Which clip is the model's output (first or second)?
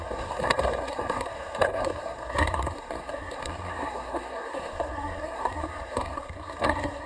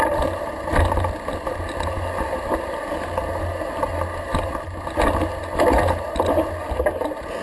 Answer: first